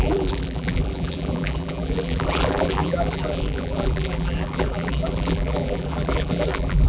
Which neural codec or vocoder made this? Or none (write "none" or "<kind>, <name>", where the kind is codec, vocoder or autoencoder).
vocoder, BigVGAN v2